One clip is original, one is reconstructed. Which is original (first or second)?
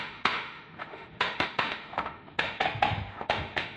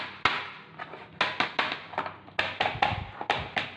second